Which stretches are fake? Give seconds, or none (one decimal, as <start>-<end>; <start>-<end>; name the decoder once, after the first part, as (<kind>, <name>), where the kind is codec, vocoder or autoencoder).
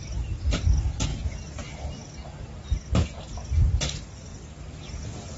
none